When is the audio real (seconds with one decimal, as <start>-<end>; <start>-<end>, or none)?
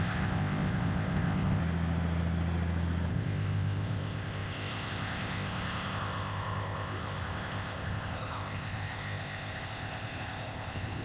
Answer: 1.6-3.1